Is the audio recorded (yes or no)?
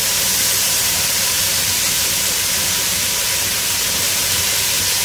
no